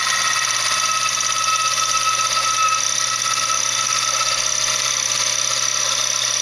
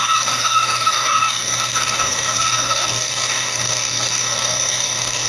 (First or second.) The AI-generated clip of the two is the second